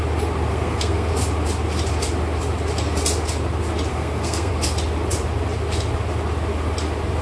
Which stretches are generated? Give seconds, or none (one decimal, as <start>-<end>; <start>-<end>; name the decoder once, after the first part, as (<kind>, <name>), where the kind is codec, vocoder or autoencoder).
0.5-1.1 (codec, SNAC); 3.9-4.5